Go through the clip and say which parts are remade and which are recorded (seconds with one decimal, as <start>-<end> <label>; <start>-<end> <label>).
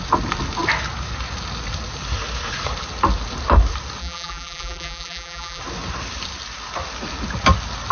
0.0-4.0 recorded; 4.0-5.6 remade; 5.6-7.9 recorded